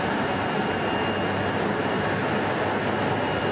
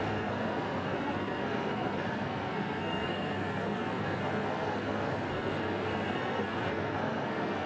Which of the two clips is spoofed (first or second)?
second